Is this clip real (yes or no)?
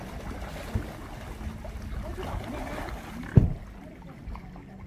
yes